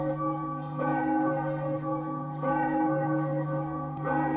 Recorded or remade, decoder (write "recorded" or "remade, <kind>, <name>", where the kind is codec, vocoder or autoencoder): remade, codec, SNAC